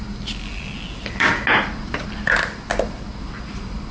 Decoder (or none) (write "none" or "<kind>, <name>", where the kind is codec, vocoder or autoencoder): none